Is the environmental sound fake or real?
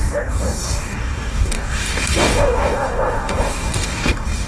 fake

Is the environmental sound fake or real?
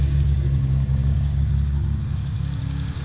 fake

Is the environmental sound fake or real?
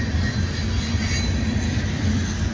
real